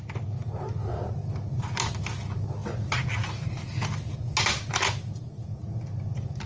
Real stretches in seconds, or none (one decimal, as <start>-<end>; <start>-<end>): 0.0-6.5